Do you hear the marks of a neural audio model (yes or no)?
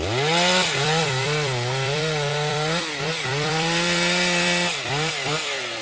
yes